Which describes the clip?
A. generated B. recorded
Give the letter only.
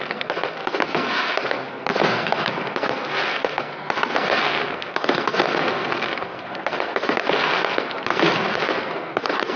A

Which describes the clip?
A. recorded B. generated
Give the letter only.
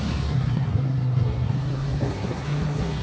B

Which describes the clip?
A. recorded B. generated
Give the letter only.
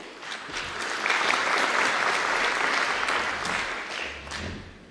A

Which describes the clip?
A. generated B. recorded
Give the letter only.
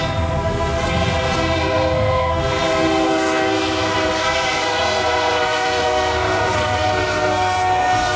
A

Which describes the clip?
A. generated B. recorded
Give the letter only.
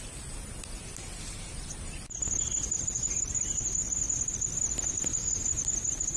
B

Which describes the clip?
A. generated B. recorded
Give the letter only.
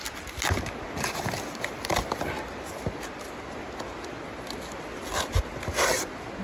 B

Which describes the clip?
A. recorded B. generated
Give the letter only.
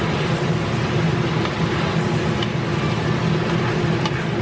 A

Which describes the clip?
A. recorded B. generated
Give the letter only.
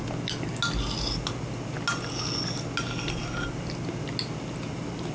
A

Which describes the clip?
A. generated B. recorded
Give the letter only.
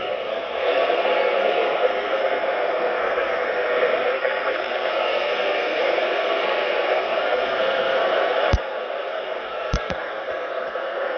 A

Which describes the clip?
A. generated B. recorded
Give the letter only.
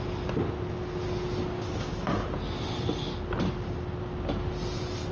B